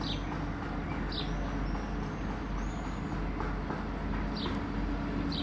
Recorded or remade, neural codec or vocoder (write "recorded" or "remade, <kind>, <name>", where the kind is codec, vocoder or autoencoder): recorded